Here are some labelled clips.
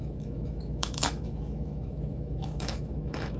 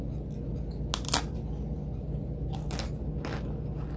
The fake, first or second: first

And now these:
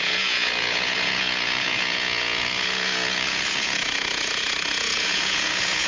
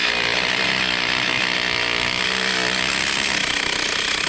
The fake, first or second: first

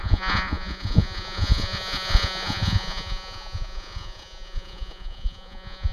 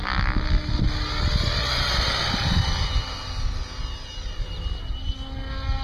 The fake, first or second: first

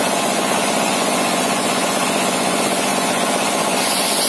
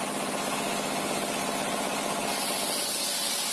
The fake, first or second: first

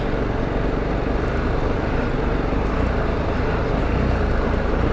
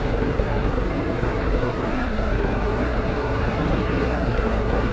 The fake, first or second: second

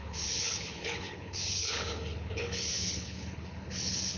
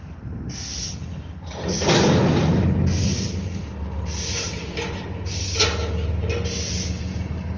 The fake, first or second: first